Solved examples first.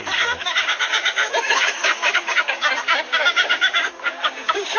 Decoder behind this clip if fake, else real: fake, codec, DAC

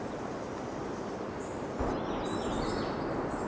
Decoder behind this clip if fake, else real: real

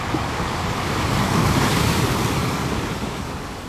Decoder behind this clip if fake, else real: fake, codec, DAC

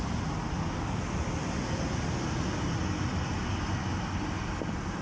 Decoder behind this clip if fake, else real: real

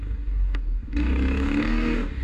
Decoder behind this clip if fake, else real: fake, codec, DAC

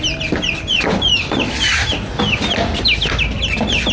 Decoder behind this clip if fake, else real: real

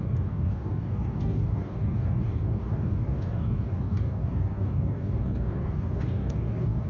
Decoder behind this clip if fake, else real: fake, codec, DAC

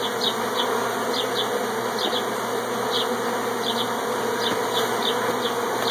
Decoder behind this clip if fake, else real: real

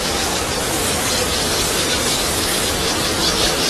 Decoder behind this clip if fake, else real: fake, codec, DAC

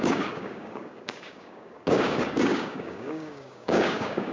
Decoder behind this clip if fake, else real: fake, codec, DAC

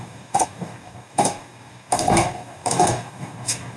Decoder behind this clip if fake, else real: fake, codec, DAC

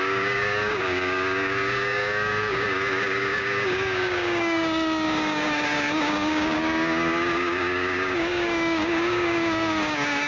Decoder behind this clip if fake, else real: fake, codec, DAC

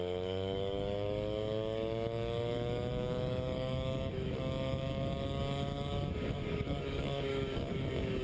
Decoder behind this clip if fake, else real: fake, codec, DAC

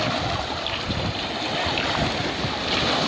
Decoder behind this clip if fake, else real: real